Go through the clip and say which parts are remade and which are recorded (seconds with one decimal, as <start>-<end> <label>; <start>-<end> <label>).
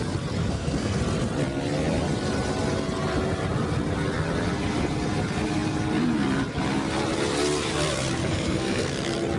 0.0-0.4 recorded; 0.4-1.0 remade; 1.0-8.2 recorded; 8.2-8.9 remade; 8.9-9.4 recorded